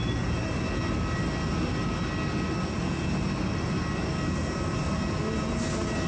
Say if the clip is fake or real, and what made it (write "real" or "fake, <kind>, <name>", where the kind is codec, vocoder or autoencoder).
real